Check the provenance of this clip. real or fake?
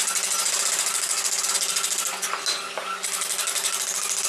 real